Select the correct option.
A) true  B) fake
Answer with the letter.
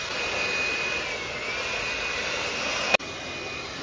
A